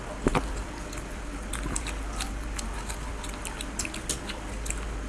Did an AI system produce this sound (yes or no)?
no